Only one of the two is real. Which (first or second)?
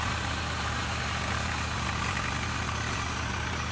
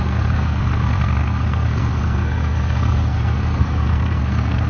first